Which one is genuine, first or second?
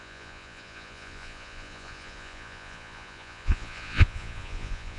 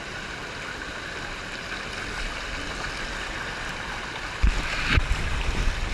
second